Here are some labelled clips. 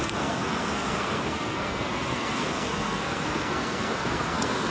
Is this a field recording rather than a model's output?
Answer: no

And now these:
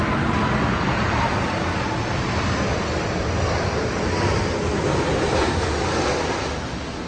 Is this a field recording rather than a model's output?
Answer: yes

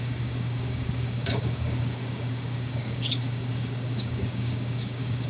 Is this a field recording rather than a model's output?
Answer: no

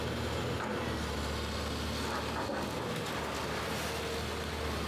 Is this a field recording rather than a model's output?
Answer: yes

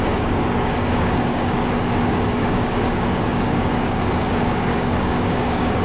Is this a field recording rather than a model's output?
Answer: no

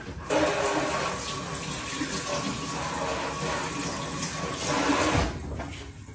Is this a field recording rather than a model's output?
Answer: yes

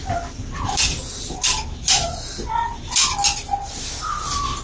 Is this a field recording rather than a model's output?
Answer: yes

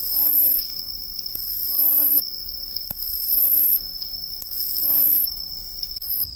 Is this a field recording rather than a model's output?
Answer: no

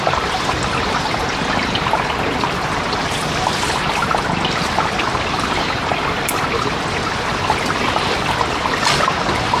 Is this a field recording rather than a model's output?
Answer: yes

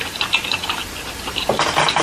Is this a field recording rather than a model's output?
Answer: yes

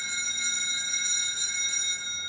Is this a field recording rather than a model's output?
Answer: yes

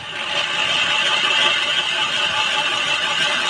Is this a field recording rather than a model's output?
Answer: yes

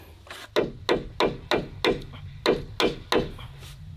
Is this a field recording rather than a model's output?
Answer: yes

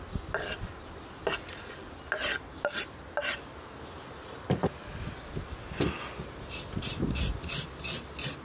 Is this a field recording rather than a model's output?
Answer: yes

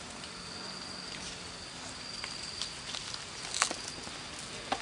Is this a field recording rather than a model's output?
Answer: yes